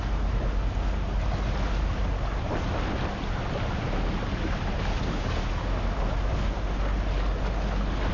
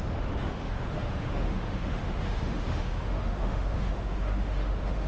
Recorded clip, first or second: first